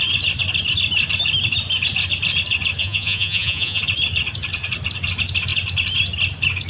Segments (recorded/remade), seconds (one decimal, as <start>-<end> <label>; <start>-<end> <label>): 0.0-2.8 recorded; 2.8-3.8 remade; 3.8-6.7 recorded